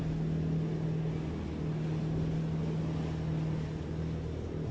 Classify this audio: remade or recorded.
recorded